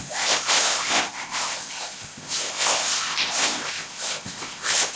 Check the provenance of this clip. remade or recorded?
remade